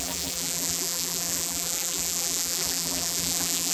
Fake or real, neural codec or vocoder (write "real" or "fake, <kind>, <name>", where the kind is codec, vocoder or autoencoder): fake, vocoder, BigVGAN v2